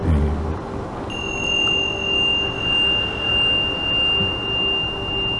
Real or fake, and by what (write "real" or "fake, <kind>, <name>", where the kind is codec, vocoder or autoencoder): real